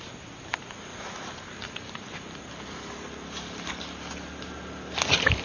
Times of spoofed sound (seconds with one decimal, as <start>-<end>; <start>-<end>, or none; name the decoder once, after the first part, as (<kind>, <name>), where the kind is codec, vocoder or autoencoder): 0.9-4.1 (vocoder, BigVGAN v2)